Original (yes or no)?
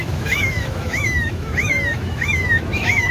no